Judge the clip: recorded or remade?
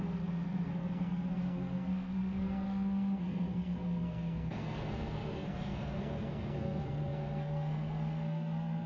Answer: remade